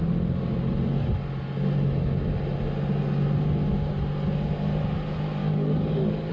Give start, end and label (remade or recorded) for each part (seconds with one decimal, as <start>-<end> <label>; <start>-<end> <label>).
0.0-5.4 recorded; 5.4-6.3 remade